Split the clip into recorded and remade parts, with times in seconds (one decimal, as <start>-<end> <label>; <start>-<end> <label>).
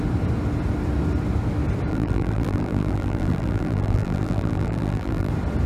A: 0.0-1.9 recorded; 1.9-5.3 remade; 5.3-5.7 recorded